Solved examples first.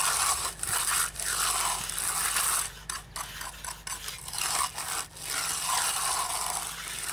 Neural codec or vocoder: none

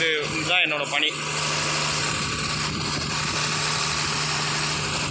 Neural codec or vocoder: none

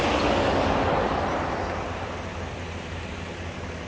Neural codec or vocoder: none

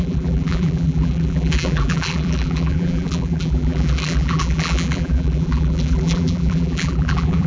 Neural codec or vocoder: vocoder, BigVGAN v2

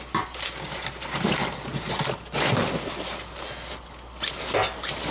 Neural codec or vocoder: none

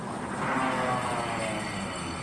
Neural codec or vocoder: none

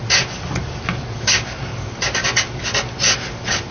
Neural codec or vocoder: none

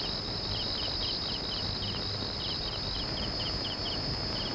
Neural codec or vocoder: none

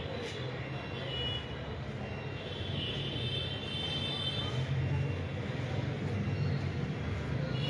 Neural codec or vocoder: none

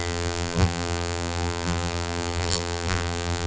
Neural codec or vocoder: vocoder, BigVGAN v2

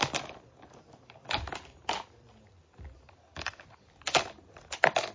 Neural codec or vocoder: vocoder, BigVGAN v2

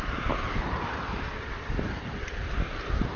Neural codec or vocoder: none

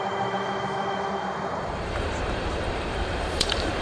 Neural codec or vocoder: vocoder, BigVGAN v2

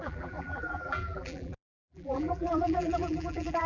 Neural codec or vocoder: vocoder, BigVGAN v2